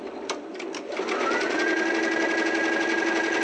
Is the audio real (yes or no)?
yes